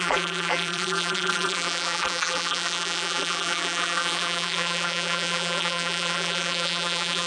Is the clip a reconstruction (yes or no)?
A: yes